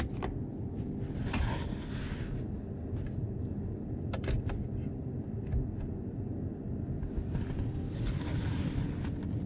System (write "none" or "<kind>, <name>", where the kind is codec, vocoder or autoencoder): none